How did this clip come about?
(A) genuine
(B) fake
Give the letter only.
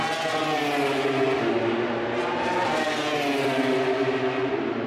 A